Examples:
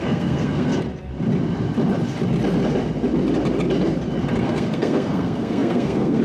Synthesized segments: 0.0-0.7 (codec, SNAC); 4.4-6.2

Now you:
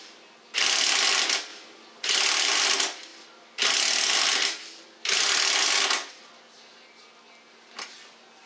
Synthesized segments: none

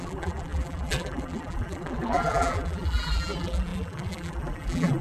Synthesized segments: 0.0-5.0 (vocoder, BigVGAN v2)

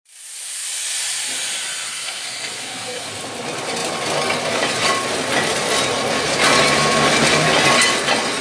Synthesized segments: 1.9-3.1 (codec, SNAC)

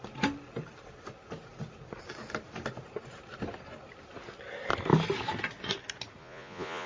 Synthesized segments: 6.2-6.9 (vocoder, Vocos)

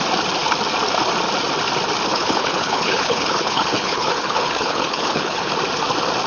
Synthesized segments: 2.1-5.5 (codec, HILCodec)